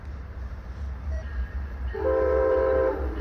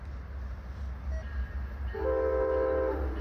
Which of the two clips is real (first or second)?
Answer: second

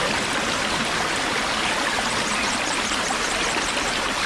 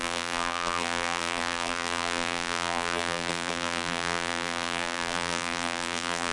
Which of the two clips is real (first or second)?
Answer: first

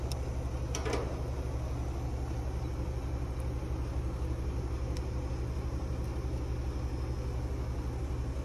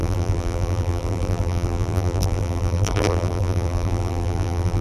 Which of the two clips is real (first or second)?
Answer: first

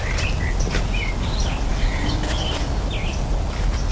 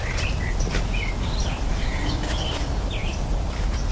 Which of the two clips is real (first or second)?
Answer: first